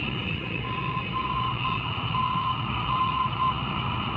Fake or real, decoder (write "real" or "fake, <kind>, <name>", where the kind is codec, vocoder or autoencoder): fake, vocoder, Vocos